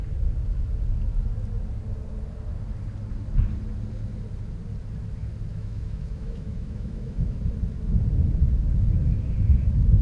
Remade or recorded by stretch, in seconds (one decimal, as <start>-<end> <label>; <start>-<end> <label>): 0.0-5.5 recorded; 5.5-7.4 remade; 7.4-10.0 recorded